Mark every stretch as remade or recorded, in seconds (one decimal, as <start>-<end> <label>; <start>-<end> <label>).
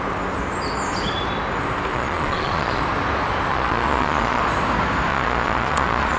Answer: 0.0-1.9 recorded; 1.9-2.8 remade; 2.8-3.5 recorded; 3.5-4.4 remade; 4.4-5.1 recorded; 5.1-6.2 remade